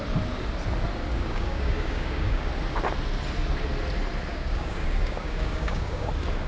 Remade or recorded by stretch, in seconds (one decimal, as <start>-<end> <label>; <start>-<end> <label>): 0.0-1.1 recorded; 1.1-2.5 remade; 2.5-4.3 recorded; 4.3-6.1 remade; 6.1-6.5 recorded